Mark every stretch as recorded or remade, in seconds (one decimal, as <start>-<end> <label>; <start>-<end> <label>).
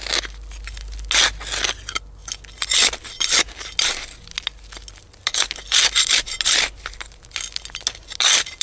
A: 0.0-8.6 recorded